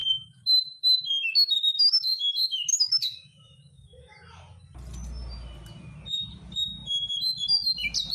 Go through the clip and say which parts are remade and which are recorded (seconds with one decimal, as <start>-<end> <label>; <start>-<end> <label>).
0.0-4.1 remade; 4.1-8.1 recorded